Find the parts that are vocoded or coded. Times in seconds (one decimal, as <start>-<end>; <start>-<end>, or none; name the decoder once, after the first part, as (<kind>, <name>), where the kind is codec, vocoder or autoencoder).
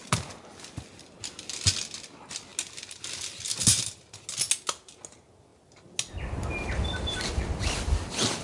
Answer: none